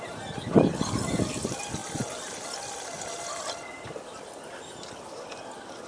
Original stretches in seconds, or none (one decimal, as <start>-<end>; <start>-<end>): 0.0-5.9